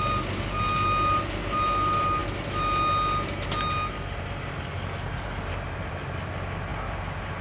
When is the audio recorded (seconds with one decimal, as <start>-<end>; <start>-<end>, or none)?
0.0-7.4